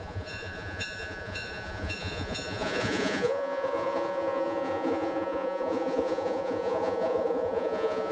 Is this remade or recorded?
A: remade